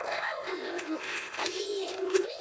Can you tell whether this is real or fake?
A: fake